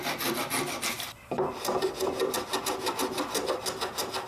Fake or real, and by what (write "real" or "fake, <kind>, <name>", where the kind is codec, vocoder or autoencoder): fake, vocoder, BigVGAN v2